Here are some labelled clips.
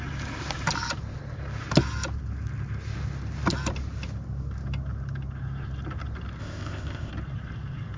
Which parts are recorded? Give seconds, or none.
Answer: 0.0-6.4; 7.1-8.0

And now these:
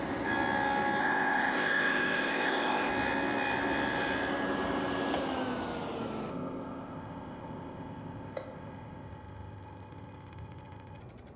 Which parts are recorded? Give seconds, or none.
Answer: 0.0-1.0; 2.9-6.3; 11.0-11.4

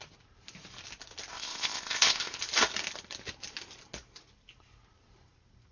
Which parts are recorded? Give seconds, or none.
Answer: 0.0-1.3; 2.4-5.7

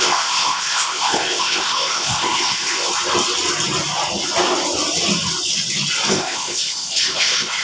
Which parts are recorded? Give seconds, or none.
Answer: 2.9-6.1

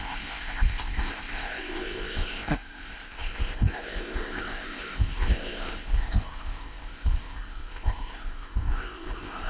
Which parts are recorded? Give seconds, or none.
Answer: none

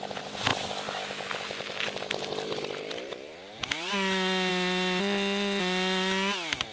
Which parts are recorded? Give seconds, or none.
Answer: 0.0-5.0; 5.6-6.7

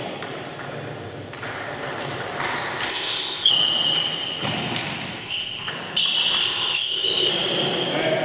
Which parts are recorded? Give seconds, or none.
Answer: 0.0-2.9; 3.5-5.2; 5.7-6.4; 7.3-8.2

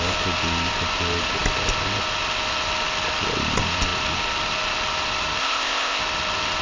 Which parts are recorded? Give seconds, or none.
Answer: 0.0-5.4; 6.0-6.6